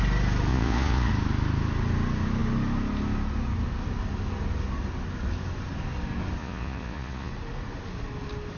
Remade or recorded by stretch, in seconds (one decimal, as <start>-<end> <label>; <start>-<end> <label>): 0.0-0.5 recorded; 0.5-1.1 remade; 1.1-6.4 recorded; 6.4-7.3 remade; 7.3-8.6 recorded